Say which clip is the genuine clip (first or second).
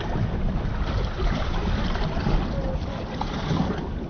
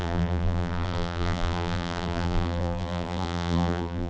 first